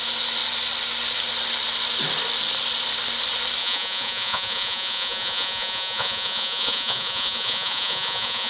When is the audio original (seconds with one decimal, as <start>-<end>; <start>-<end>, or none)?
0.0-3.6